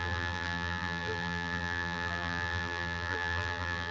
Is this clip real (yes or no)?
no